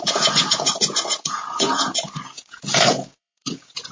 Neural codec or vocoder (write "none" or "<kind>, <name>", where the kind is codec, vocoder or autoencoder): vocoder, Vocos